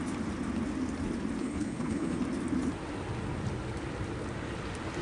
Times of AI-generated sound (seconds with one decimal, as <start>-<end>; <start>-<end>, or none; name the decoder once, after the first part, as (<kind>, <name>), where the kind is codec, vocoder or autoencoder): 1.4-2.2 (codec, HILCodec)